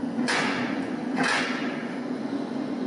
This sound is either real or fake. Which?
fake